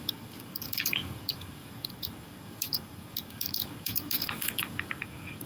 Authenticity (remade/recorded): remade